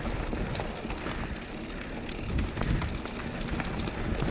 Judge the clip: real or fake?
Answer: real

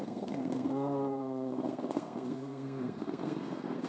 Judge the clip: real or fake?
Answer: fake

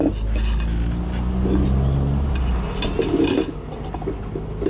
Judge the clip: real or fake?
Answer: real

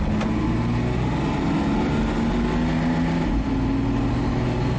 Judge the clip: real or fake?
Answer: real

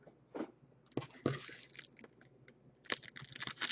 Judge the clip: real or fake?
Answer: real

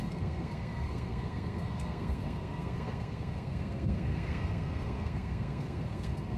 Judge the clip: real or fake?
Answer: fake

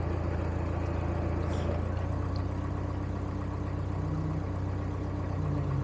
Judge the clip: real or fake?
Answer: real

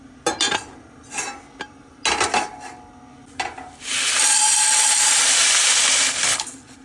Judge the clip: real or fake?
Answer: real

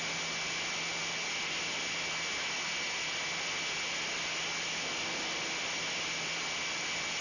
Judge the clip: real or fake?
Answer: real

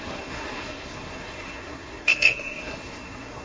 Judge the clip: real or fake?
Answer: fake